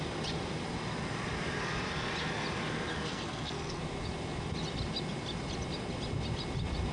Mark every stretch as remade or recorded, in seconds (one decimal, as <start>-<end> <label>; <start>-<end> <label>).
0.0-2.9 recorded; 2.9-3.8 remade; 3.8-6.9 recorded